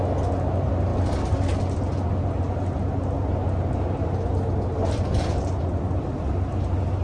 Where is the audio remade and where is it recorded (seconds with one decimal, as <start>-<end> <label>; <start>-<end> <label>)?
0.0-7.0 recorded